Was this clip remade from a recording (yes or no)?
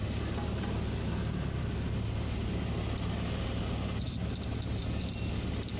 no